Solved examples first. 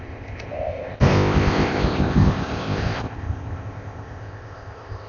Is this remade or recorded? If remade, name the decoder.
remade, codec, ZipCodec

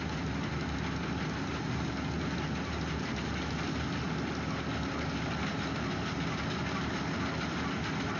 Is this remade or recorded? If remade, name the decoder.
recorded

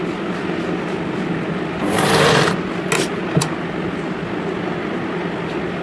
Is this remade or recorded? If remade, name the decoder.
recorded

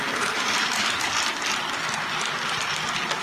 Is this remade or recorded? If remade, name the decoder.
recorded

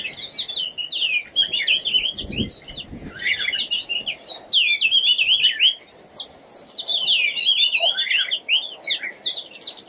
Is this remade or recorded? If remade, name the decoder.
recorded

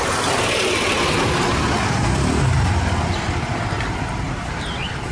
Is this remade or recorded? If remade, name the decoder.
remade, vocoder, BigVGAN v2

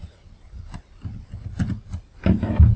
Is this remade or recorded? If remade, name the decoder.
recorded